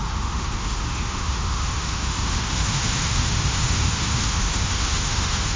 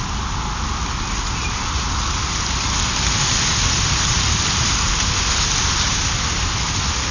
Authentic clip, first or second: second